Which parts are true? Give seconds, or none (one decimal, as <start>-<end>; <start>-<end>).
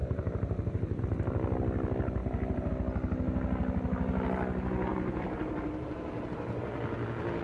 1.0-2.2; 2.7-4.9; 6.2-7.4